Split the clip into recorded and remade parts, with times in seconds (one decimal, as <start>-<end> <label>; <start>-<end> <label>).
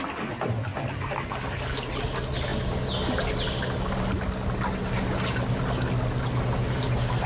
0.0-7.3 recorded